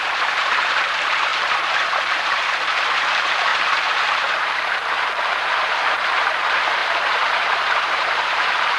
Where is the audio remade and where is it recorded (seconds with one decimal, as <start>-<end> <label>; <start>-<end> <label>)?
0.0-8.8 remade